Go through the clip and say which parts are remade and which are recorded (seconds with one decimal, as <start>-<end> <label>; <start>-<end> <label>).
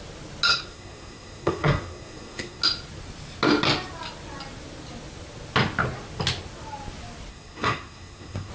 0.0-0.5 recorded; 0.5-2.6 remade; 2.6-7.3 recorded; 7.3-8.5 remade